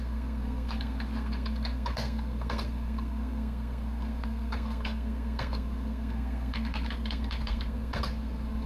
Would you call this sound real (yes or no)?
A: no